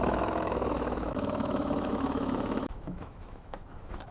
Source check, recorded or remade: remade